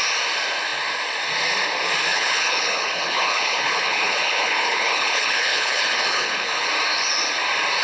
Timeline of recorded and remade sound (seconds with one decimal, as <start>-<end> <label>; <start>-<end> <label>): 0.0-2.1 recorded; 2.1-6.7 remade; 6.7-7.8 recorded